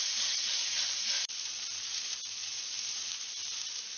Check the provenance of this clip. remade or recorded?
remade